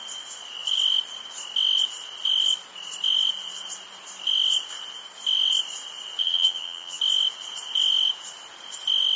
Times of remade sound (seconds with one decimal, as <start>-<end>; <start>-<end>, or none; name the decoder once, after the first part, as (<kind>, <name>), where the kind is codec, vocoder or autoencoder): 6.2-7.0 (vocoder, HiFi-GAN)

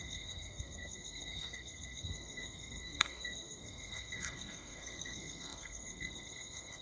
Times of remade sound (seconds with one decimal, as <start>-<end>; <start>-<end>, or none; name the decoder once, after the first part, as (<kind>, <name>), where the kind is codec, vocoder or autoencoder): 0.0-6.8 (codec, SNAC)

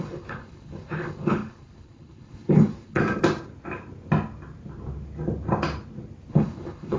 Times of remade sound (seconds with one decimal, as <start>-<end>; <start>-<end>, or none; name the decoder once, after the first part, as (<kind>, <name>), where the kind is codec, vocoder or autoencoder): 0.0-3.0 (codec, HILCodec); 6.3-7.0